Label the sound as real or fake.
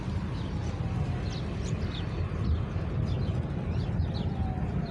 real